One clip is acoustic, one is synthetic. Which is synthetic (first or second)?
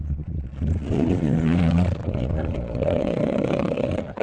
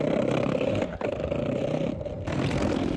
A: first